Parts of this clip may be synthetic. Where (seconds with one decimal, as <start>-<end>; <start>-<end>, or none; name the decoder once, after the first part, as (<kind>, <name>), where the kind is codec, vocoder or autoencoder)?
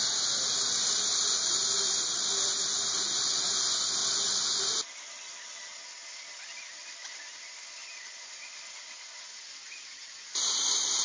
2.7-3.2 (vocoder, Vocos); 7.8-10.2